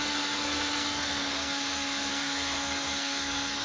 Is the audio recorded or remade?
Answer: remade